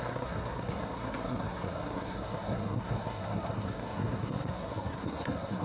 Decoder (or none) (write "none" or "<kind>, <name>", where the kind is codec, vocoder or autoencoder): codec, SNAC